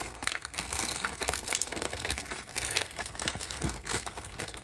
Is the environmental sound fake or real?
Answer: fake